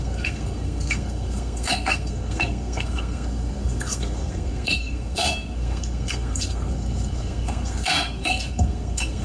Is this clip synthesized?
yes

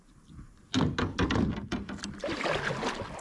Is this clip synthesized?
no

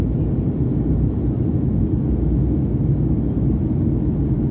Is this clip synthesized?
no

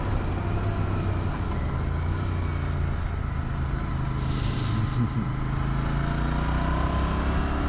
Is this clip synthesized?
no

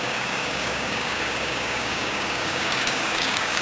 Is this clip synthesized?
yes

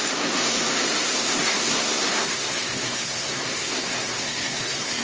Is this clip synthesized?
yes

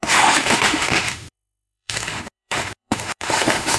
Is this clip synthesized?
yes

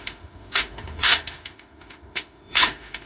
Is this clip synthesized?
yes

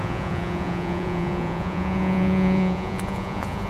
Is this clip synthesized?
yes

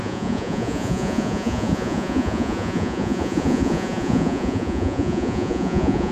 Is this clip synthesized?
yes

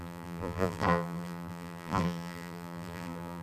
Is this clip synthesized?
yes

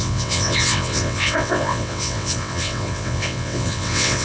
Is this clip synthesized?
yes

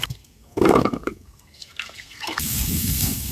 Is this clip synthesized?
yes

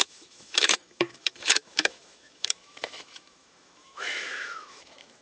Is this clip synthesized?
yes